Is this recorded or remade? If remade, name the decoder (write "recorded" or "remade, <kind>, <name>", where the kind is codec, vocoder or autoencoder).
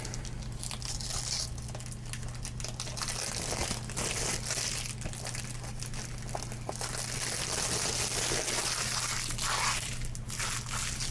recorded